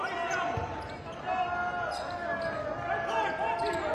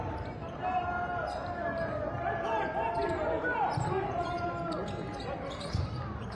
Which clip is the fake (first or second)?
second